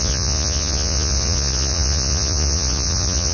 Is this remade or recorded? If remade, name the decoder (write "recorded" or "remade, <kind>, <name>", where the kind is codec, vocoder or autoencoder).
remade, vocoder, Vocos